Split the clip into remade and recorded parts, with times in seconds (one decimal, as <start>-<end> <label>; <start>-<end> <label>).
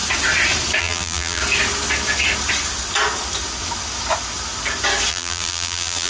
0.0-0.8 recorded; 0.8-1.4 remade; 1.4-5.1 recorded; 5.1-6.1 remade